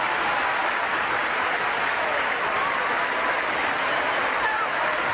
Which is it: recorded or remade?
recorded